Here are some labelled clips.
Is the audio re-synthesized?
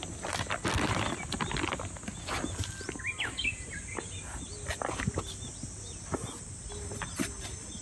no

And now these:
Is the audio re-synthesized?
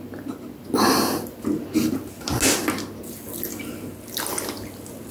no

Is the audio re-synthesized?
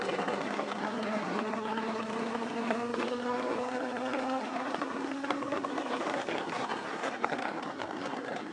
yes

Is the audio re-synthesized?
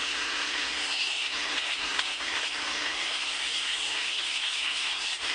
yes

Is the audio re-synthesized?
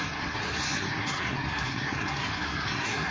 yes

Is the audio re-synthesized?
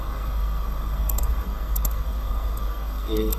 yes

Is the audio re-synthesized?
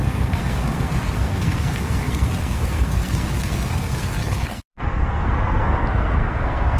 yes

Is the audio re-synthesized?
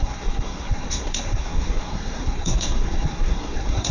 yes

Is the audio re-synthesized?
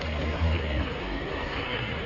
yes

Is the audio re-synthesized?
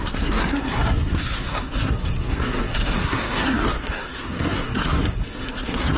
yes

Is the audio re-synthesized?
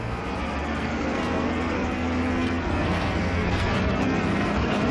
yes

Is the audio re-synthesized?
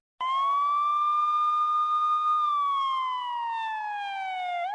no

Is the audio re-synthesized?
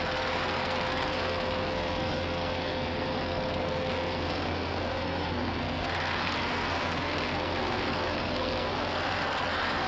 yes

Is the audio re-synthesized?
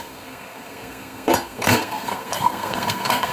yes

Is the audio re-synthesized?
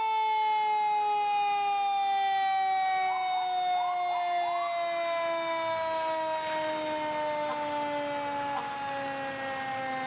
no